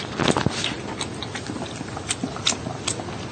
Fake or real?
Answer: real